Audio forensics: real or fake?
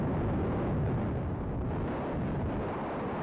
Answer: real